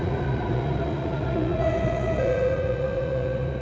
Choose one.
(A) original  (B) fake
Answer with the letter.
B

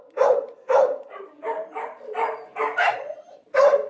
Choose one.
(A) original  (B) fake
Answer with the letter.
B